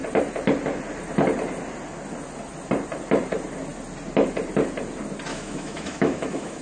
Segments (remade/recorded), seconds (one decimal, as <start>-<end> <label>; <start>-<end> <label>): 0.0-5.3 recorded; 5.3-6.6 remade